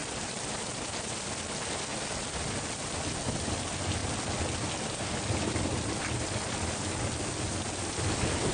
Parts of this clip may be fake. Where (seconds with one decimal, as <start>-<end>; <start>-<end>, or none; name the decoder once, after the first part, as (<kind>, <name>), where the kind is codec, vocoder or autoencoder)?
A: none